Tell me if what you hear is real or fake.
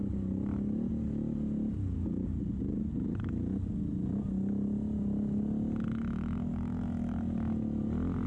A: real